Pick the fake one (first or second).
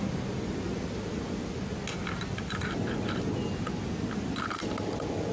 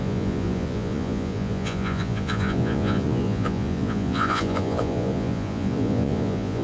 second